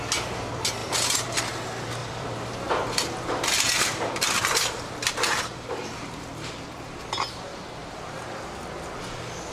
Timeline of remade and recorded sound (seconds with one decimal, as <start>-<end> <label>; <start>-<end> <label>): 0.0-0.8 recorded; 0.8-1.4 remade; 1.4-2.0 recorded; 2.0-7.0 remade; 7.0-7.8 recorded; 7.8-8.4 remade; 8.4-9.5 recorded